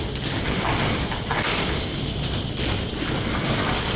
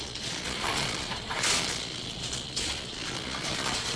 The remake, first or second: second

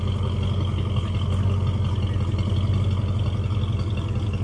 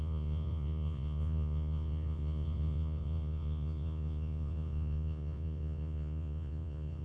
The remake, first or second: second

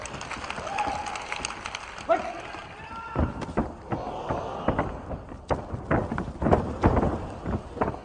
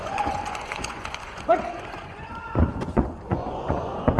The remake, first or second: second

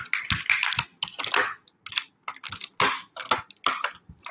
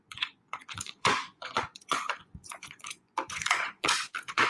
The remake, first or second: second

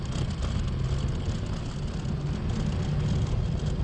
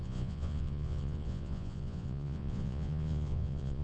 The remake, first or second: second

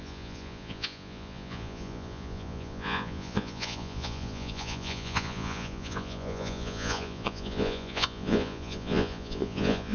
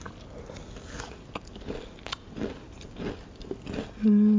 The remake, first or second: first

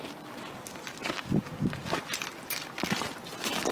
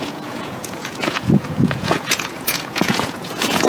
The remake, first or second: second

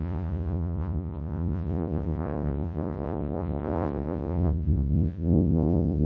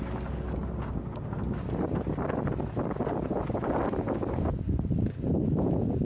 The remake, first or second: first